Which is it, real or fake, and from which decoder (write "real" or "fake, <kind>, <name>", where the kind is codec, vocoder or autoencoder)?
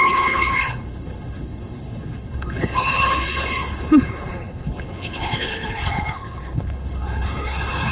fake, codec, HILCodec